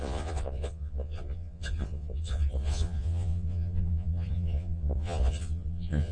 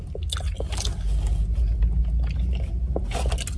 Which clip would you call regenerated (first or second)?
first